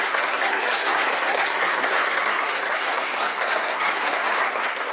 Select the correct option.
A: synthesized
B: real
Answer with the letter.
A